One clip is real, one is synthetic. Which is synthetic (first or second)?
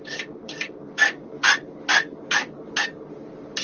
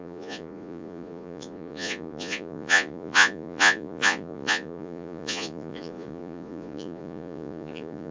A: second